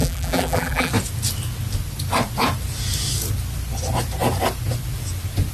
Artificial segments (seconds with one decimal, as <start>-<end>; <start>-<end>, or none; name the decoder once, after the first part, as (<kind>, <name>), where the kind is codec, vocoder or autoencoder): 0.0-0.9 (vocoder, BigVGAN v2)